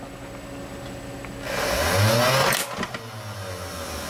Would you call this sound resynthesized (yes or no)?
no